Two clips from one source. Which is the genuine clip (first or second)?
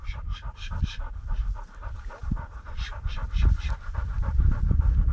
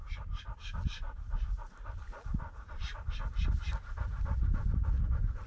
second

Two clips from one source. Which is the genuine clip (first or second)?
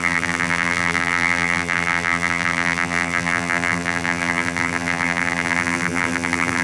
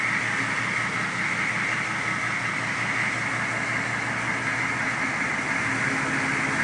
second